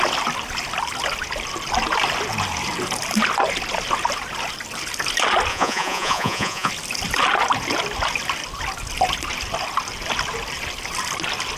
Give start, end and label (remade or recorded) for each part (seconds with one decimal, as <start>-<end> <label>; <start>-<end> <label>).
0.0-5.5 recorded; 5.5-6.7 remade; 6.7-11.6 recorded